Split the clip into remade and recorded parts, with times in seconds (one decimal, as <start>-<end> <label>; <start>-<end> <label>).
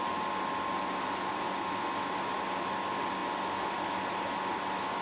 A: 0.0-5.0 recorded